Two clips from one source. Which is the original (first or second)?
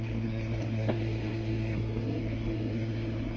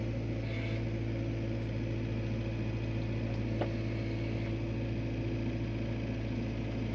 second